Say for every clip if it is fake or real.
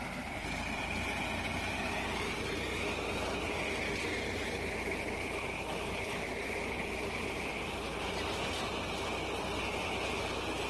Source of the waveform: real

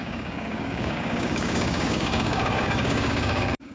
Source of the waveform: fake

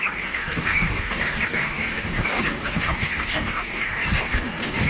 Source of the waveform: fake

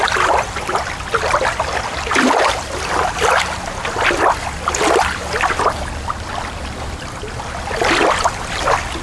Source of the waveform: real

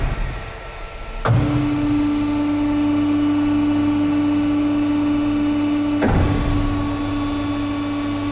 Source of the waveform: real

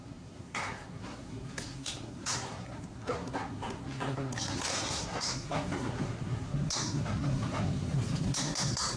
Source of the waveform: fake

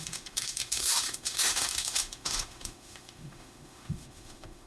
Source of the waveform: fake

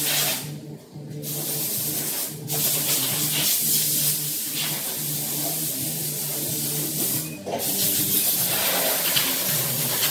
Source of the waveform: real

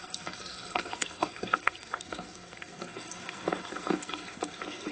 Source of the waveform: fake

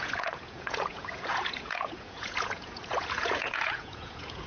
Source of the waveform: fake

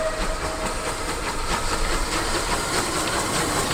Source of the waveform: real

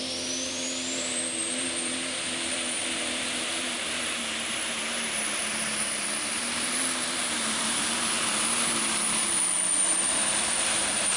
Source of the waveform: fake